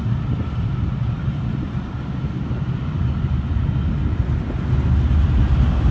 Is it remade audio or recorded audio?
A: recorded